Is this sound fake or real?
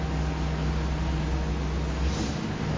real